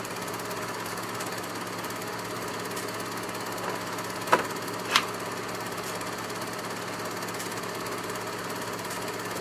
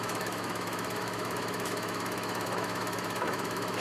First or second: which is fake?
second